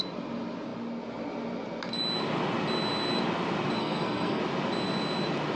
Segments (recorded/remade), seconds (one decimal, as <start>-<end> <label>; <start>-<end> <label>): 0.0-3.8 recorded; 3.8-4.4 remade; 4.4-5.6 recorded

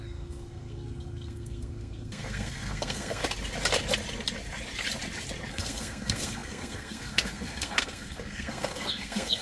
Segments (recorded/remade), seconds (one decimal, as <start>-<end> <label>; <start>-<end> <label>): 0.0-3.2 remade; 3.2-5.5 recorded; 5.5-9.4 remade

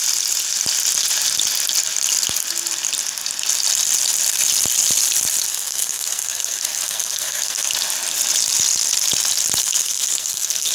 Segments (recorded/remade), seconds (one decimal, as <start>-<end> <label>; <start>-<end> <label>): 0.0-5.5 recorded; 5.5-7.7 remade; 7.7-9.6 recorded; 9.6-10.7 remade

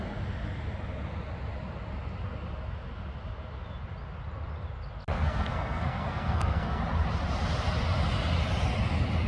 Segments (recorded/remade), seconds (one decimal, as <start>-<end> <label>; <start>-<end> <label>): 0.0-5.1 recorded; 5.1-6.8 remade; 6.8-9.3 recorded

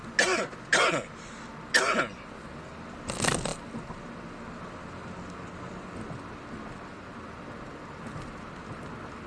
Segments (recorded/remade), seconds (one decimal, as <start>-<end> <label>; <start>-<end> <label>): 0.0-9.3 recorded

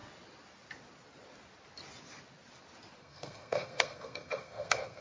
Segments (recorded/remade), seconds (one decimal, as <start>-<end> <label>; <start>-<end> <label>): 0.0-3.0 recorded; 3.0-5.0 remade